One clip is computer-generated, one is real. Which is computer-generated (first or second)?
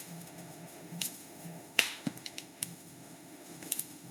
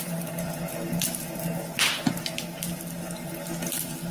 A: first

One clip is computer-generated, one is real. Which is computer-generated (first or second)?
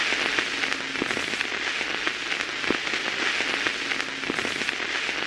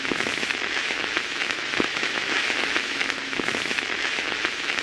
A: second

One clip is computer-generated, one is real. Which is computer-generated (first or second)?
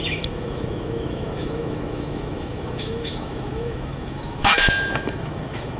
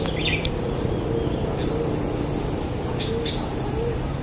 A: first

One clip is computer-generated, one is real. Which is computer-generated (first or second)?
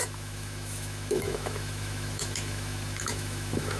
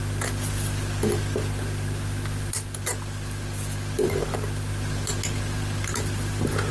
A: first